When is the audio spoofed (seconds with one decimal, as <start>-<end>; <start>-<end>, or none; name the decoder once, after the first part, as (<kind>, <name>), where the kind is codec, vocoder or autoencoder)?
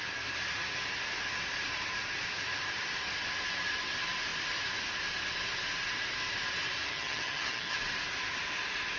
6.9-7.8 (vocoder, HiFi-GAN)